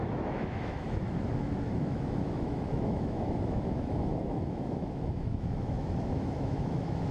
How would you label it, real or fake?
fake